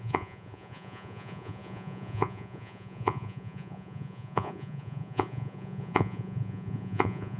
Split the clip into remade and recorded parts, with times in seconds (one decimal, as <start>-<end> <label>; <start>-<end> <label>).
0.0-7.4 remade